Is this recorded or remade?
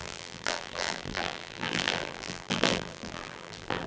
remade